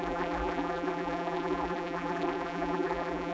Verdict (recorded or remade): remade